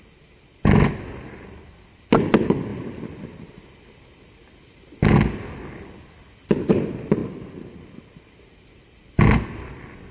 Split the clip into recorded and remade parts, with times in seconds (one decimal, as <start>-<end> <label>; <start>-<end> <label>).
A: 0.0-10.1 recorded